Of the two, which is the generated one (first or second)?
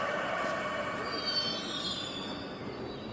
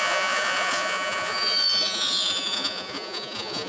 second